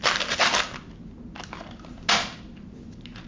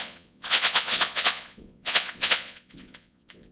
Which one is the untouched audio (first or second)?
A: first